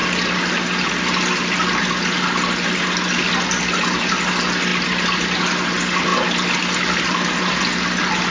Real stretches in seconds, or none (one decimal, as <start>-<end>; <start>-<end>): 0.0-8.3